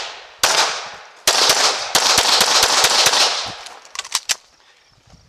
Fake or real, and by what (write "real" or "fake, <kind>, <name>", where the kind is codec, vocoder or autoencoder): real